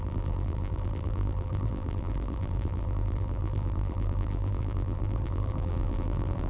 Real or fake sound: fake